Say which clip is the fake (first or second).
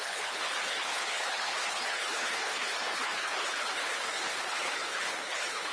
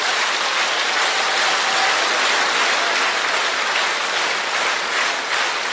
first